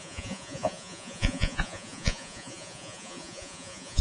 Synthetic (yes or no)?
yes